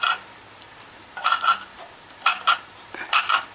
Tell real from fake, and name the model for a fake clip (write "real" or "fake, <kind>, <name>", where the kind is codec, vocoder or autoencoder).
real